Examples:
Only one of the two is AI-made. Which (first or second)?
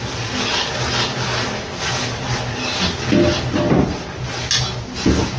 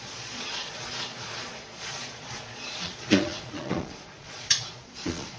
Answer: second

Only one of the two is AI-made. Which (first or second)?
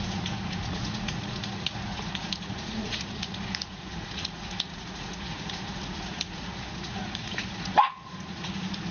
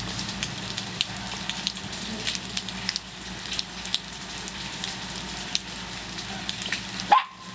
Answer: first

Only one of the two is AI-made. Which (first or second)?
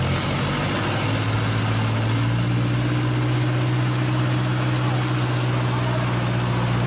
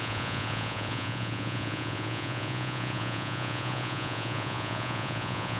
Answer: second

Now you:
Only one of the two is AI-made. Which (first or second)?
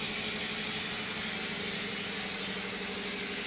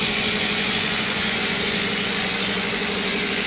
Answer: second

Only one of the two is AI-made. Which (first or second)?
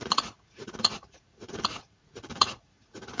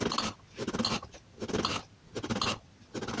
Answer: first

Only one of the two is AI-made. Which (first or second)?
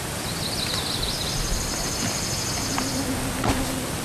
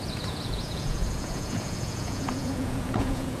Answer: second